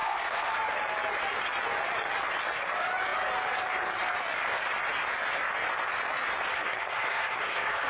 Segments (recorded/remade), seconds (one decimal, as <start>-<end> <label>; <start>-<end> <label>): 0.0-0.5 remade; 0.5-6.5 recorded; 6.5-7.9 remade